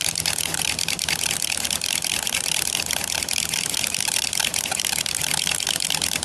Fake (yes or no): no